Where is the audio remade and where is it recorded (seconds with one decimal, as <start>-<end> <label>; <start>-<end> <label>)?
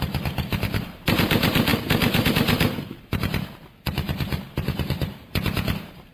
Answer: 0.0-6.1 remade